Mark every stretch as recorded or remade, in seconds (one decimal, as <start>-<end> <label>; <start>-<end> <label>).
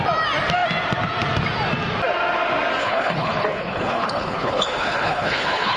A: 0.0-2.8 recorded; 2.8-5.8 remade